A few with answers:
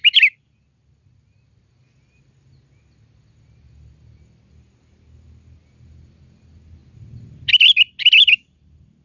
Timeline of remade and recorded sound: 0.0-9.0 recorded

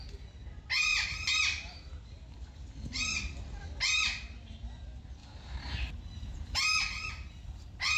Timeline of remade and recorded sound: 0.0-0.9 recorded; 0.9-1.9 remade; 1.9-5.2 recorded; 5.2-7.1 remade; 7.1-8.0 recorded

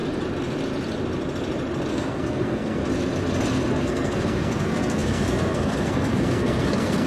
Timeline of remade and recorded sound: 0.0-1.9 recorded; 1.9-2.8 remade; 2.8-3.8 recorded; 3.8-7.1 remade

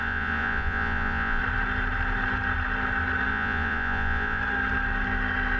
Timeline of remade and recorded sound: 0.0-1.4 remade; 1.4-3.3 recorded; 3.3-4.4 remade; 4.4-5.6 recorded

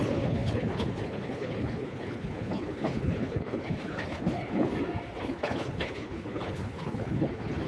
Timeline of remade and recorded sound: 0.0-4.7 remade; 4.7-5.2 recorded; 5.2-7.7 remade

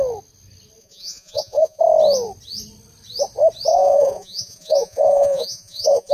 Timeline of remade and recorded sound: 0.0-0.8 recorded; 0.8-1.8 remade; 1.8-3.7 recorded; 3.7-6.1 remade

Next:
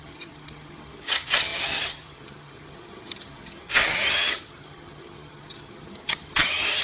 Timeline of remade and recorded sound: 0.0-6.8 remade

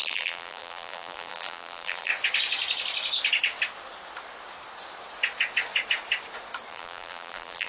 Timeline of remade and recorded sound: 0.0-2.1 remade; 2.1-6.7 recorded; 6.7-7.7 remade